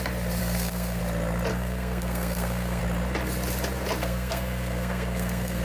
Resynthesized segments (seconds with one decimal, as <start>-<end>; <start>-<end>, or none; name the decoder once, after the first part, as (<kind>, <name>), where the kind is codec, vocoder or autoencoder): 0.4-1.0 (codec, SNAC); 1.5-2.8; 4.0-5.6